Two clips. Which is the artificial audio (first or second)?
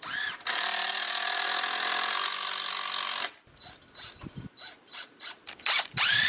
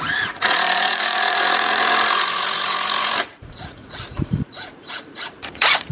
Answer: second